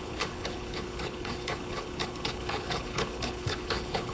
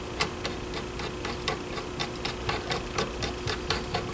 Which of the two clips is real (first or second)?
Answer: second